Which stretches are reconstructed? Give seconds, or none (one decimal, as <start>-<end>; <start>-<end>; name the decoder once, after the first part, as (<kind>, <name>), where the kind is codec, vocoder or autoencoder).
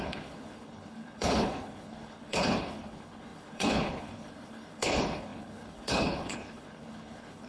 0.0-7.5 (codec, HILCodec)